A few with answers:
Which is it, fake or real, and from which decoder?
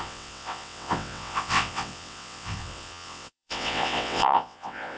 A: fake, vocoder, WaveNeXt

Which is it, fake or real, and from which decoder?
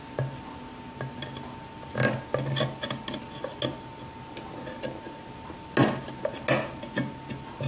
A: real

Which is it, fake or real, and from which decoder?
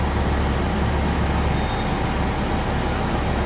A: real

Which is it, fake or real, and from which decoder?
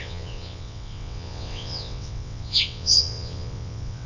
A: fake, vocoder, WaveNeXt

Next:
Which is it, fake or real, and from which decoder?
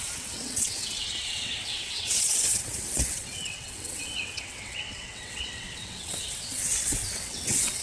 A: fake, vocoder, WaveNeXt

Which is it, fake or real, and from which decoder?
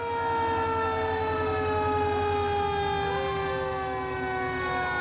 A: real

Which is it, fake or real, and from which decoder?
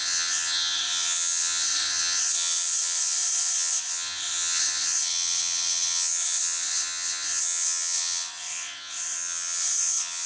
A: fake, vocoder, WaveNeXt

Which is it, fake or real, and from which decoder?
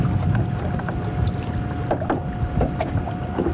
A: real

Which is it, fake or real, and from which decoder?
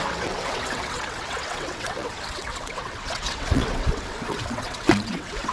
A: fake, vocoder, WaveNeXt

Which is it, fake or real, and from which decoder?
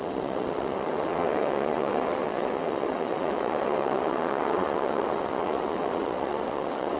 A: fake, vocoder, WaveNeXt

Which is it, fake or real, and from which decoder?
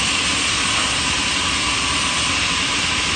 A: real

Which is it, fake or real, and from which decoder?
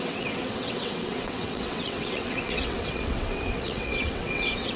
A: fake, vocoder, WaveNeXt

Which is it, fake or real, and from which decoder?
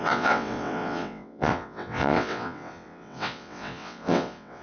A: fake, vocoder, WaveNeXt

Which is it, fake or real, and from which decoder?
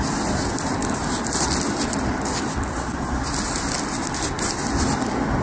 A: real